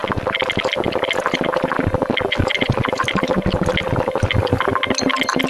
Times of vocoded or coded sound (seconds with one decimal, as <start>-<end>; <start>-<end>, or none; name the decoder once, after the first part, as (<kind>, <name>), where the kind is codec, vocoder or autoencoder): none